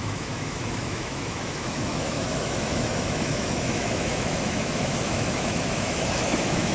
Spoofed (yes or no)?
yes